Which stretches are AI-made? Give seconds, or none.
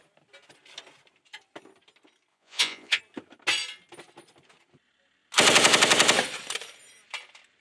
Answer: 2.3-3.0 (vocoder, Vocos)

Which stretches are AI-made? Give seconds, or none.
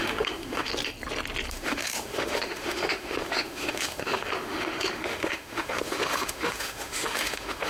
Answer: 0.0-0.7 (autoencoder, DAC-VAE); 1.5-7.7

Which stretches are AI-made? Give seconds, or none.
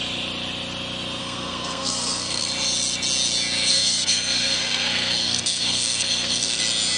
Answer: 1.2-2.4 (codec, SNAC); 3.7-6.6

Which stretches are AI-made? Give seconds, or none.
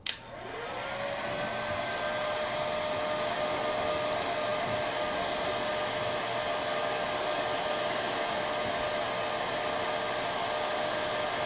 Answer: none